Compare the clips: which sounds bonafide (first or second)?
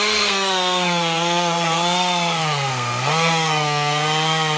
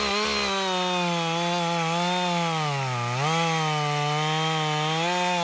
second